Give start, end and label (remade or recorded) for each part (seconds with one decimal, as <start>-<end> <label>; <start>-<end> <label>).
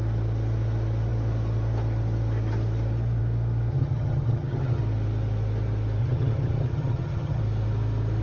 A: 0.0-3.7 recorded; 3.7-4.8 remade; 4.8-6.0 recorded; 6.0-7.4 remade; 7.4-8.2 recorded